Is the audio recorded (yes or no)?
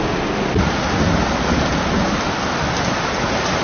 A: yes